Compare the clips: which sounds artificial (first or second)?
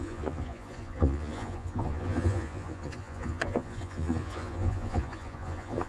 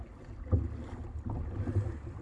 first